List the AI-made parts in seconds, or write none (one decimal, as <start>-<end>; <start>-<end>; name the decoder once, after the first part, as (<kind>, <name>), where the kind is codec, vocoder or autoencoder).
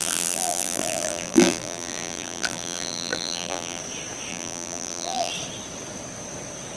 0.0-3.8 (vocoder, BigVGAN v2); 4.3-5.3